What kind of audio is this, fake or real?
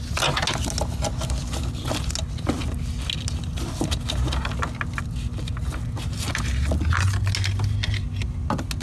real